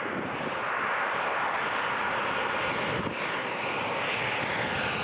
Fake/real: real